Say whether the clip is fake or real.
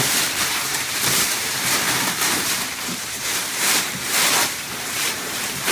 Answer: fake